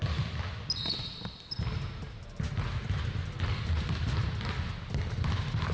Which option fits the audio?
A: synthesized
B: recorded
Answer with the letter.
B